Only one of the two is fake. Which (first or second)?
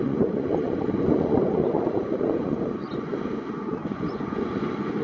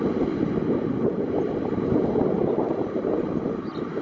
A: first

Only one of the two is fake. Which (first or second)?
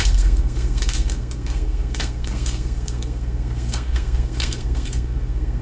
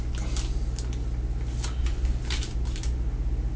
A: first